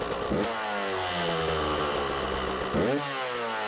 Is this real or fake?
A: real